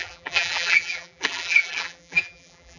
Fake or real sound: fake